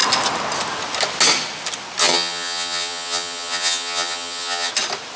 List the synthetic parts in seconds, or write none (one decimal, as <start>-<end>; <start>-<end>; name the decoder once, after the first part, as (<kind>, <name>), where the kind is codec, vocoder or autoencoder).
2.0-4.7 (vocoder, HiFi-GAN)